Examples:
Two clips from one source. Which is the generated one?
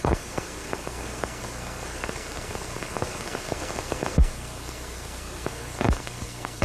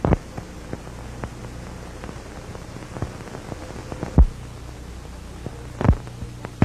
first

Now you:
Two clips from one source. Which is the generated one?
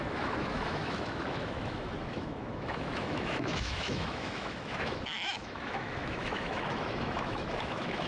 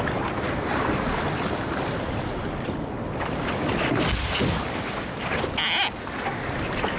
first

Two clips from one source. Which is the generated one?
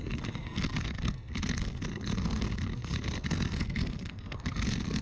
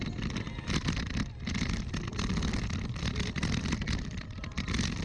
first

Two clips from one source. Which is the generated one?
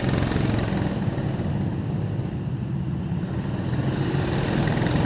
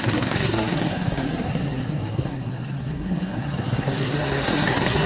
second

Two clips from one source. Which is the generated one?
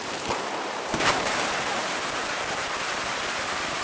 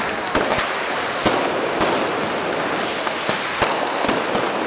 first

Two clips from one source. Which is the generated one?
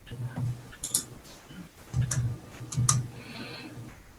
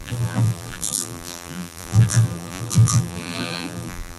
second